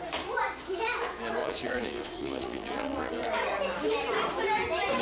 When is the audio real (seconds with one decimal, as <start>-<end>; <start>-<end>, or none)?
0.0-1.4; 3.1-5.0